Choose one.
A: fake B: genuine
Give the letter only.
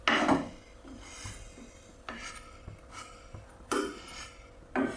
B